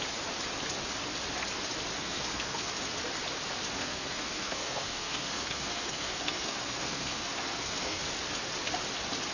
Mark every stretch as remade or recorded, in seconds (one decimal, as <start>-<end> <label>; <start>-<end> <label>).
0.0-2.0 recorded; 2.0-2.7 remade; 2.7-3.8 recorded; 3.8-8.0 remade; 8.0-9.3 recorded